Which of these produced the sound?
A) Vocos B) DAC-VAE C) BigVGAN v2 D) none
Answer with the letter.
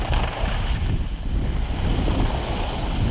D